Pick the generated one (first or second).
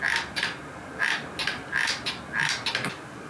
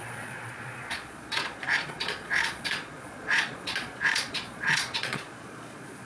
second